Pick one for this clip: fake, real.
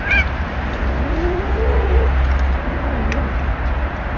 real